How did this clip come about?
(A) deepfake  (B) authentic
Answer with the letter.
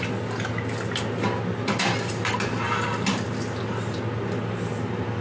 B